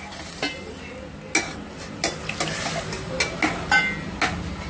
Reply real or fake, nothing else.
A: real